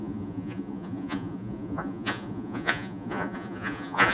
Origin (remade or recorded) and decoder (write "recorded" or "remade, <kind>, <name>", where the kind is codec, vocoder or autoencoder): remade, vocoder, Vocos